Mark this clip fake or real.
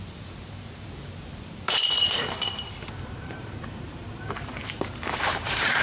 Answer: fake